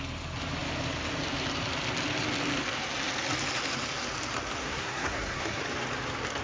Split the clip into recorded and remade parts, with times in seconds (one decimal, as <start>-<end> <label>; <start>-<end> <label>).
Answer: 0.0-4.6 recorded; 4.6-5.6 remade; 5.6-6.4 recorded